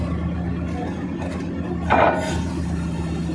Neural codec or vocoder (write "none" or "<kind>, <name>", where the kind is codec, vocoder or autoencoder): none